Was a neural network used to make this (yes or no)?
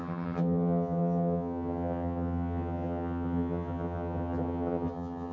yes